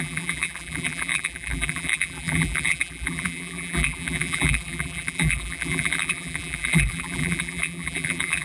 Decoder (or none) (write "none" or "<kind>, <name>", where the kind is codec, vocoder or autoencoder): vocoder, BigVGAN v2